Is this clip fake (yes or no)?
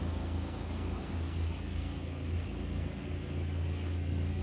yes